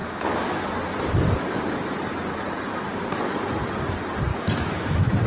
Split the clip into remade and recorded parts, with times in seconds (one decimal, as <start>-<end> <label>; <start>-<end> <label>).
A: 0.0-0.6 remade; 0.6-4.3 recorded; 4.3-5.3 remade